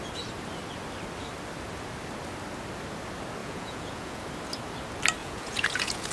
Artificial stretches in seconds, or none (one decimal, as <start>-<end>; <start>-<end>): 3.4-4.2; 5.2-6.1